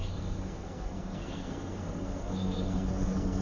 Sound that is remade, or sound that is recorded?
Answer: remade